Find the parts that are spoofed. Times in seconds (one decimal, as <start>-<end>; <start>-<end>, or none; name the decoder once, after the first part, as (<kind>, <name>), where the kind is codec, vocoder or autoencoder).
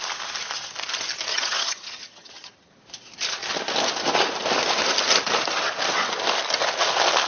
1.3-2.7 (vocoder, HiFi-GAN)